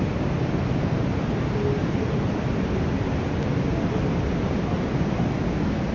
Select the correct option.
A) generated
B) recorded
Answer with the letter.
B